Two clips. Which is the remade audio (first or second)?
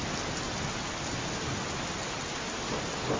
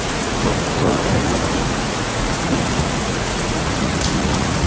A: second